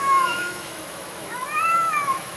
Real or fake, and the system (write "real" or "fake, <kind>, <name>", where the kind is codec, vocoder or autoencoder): fake, autoencoder, DAC-VAE